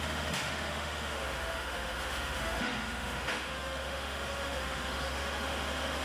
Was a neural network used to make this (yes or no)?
yes